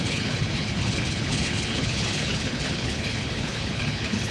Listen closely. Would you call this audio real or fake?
fake